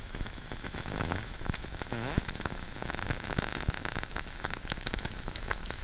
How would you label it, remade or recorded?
remade